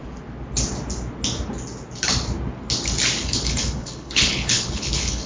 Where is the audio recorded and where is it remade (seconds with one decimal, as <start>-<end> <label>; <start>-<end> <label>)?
0.0-3.2 recorded; 3.2-5.3 remade